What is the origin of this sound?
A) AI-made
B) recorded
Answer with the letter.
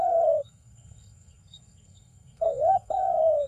A